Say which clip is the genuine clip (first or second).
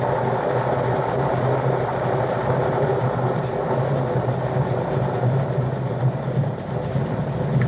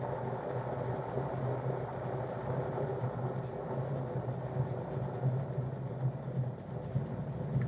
second